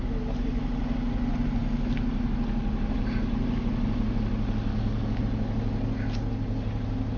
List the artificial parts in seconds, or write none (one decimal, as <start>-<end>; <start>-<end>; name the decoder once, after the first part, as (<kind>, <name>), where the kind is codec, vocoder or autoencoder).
4.7-5.2 (codec, DAC)